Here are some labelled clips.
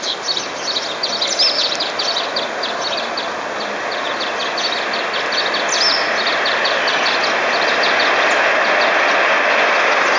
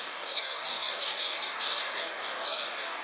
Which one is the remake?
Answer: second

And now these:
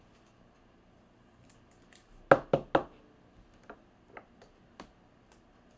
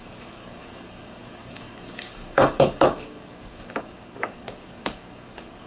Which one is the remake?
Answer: second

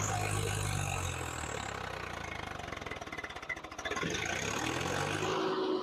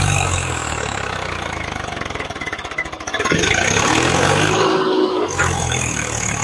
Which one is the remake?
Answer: second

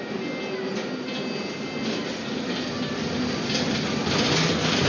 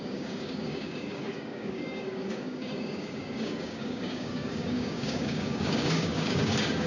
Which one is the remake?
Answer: second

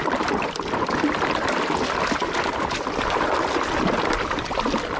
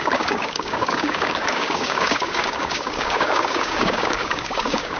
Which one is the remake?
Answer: second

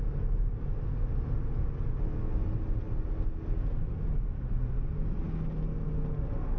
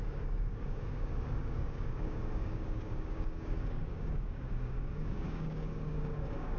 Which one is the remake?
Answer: second